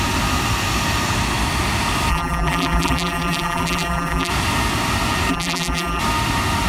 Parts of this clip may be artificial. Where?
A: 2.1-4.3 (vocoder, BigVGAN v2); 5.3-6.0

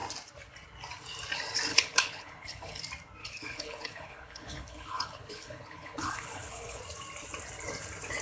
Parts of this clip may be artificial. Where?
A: 1.7-2.8 (codec, HILCodec); 3.2-6.8

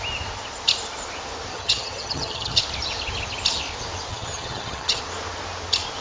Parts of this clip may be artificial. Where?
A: 1.5-2.6 (vocoder, HiFi-GAN); 4.1-5.0

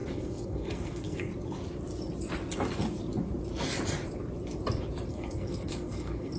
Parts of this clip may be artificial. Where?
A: 0.0-1.3 (codec, SNAC); 5.1-6.4

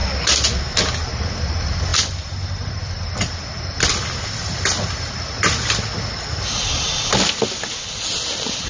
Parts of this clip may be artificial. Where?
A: none

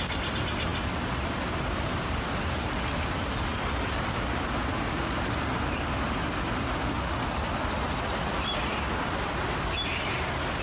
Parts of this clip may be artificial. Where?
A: none

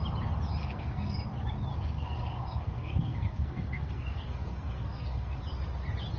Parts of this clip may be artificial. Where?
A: 0.6-1.2 (codec, SNAC); 1.7-5.4

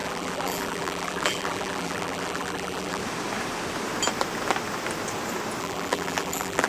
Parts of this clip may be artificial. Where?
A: 0.0-3.0 (vocoder, BigVGAN v2); 5.6-6.7